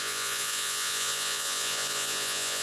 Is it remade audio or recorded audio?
remade